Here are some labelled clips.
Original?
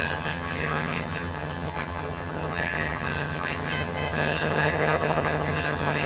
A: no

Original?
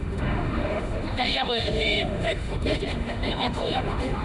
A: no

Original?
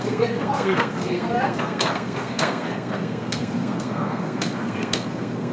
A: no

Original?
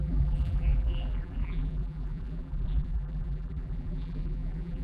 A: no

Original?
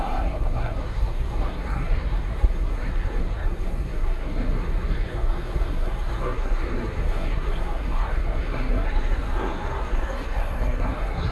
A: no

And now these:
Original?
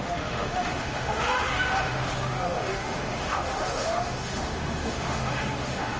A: no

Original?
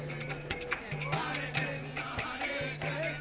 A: yes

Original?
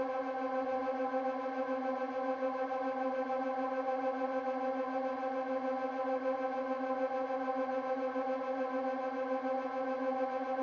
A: yes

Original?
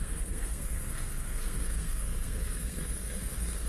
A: no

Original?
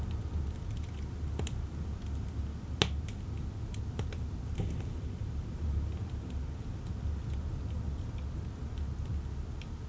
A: yes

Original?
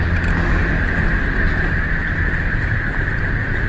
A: yes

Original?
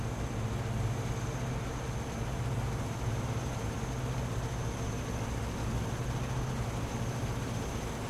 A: yes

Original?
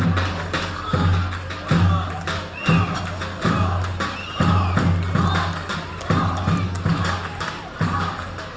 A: yes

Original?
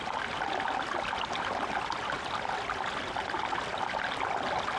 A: yes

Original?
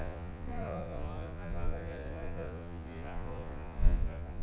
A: no